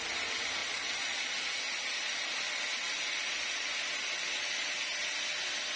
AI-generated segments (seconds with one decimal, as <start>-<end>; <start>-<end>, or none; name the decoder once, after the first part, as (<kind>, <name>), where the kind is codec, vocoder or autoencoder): none